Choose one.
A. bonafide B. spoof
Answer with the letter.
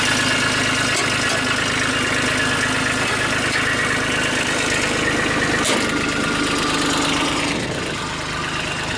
A